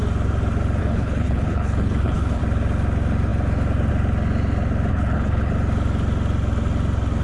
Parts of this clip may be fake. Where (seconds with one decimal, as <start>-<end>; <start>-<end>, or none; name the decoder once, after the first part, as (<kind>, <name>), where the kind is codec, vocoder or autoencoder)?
0.8-2.4 (codec, HILCodec); 4.9-5.5